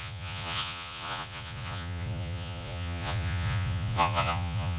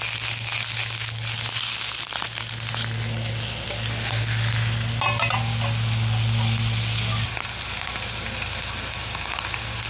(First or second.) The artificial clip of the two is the first